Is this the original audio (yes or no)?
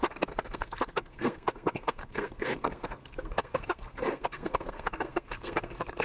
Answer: no